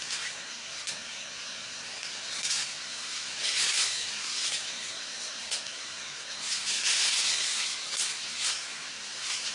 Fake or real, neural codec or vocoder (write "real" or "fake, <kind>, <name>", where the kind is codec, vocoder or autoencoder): fake, codec, SNAC